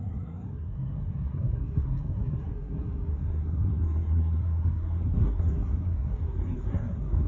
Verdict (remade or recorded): remade